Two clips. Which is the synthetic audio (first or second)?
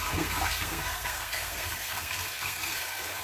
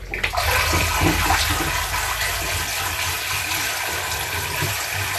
first